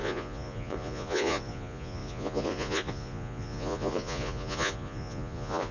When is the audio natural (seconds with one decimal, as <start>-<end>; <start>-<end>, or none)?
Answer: none